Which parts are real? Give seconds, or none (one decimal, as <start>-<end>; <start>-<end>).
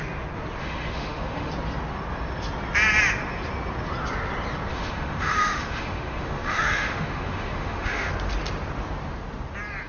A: 0.0-0.6; 1.5-4.7; 8.1-9.9